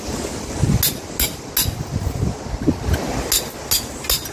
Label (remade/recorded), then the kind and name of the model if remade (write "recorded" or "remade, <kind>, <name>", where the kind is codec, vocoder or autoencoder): recorded